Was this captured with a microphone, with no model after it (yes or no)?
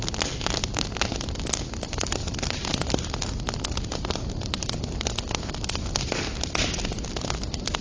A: yes